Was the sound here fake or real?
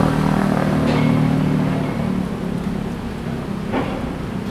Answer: real